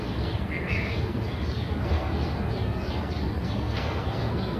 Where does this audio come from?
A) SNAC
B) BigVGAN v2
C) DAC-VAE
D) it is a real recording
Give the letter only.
A